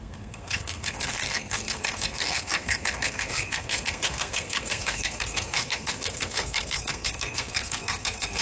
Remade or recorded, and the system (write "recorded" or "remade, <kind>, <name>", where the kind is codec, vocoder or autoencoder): remade, codec, SNAC